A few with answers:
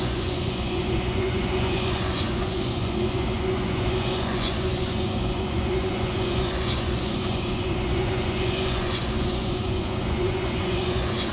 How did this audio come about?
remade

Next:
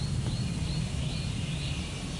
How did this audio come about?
recorded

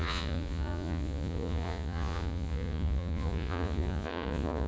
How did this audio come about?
remade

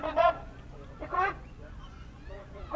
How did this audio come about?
remade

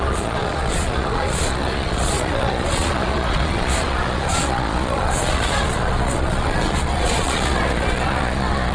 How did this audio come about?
remade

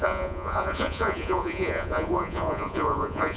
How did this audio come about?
remade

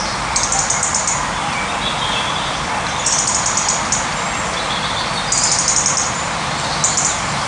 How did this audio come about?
recorded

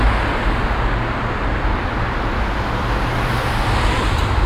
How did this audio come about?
recorded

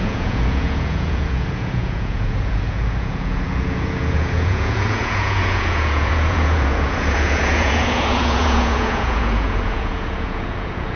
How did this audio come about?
remade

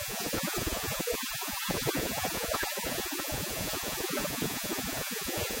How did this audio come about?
remade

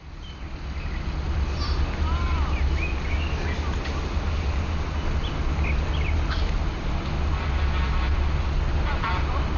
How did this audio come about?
recorded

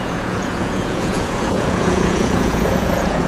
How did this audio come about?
remade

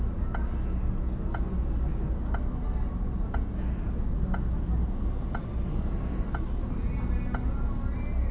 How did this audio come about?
recorded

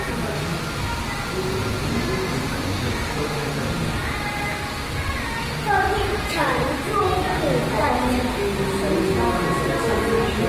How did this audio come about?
recorded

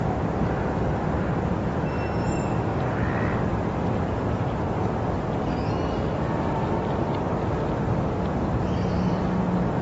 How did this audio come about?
recorded